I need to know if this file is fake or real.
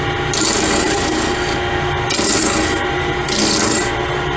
real